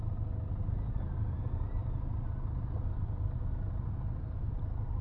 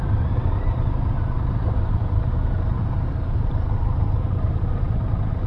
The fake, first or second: second